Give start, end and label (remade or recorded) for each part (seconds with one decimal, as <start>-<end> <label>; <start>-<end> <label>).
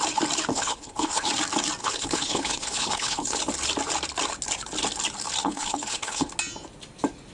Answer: 0.0-0.5 recorded; 0.5-1.3 remade; 1.3-1.8 recorded; 1.8-3.4 remade; 3.4-5.4 recorded; 5.4-6.3 remade; 6.3-7.3 recorded